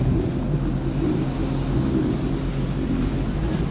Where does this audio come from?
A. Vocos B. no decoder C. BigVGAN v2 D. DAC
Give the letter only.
B